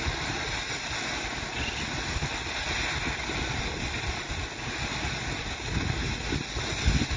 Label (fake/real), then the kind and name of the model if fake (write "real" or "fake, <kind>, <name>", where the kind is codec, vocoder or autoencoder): real